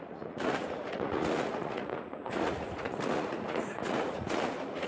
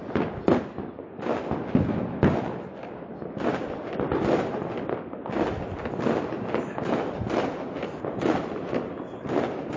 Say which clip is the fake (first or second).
first